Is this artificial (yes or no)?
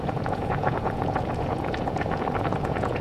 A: yes